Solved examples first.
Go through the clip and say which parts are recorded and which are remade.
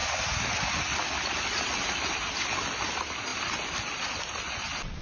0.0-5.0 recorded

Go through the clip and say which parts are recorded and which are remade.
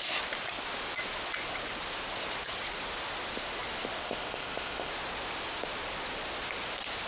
0.0-4.0 recorded; 4.0-4.9 remade; 4.9-7.1 recorded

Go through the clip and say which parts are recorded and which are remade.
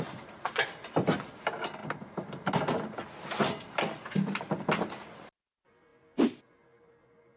0.0-7.4 recorded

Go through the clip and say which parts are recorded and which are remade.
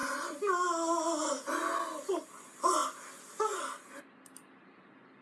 0.0-5.2 recorded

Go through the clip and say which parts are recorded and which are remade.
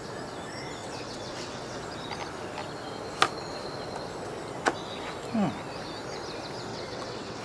0.0-0.8 recorded; 0.8-1.8 remade; 1.8-6.7 recorded; 6.7-7.4 remade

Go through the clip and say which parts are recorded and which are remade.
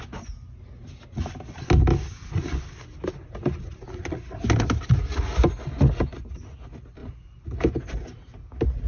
0.0-8.9 recorded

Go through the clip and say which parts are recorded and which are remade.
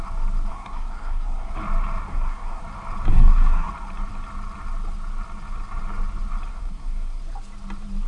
0.0-0.5 recorded; 0.5-1.5 remade; 1.5-2.1 recorded; 2.1-2.6 remade; 2.6-3.1 recorded; 3.1-3.7 remade; 3.7-6.5 recorded; 6.5-7.2 remade; 7.2-8.1 recorded